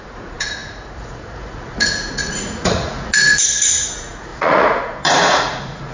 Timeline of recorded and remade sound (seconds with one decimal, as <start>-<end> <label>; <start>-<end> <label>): 0.0-5.9 remade